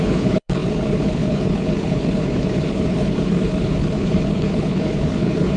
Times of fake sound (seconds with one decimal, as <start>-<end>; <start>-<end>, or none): 0.0-5.6